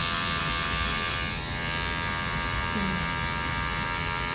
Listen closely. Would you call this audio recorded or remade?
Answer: recorded